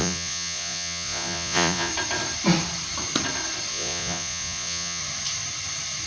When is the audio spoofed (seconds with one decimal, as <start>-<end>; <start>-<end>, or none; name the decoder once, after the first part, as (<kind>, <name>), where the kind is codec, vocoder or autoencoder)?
0.0-1.9 (vocoder, Vocos); 3.7-5.0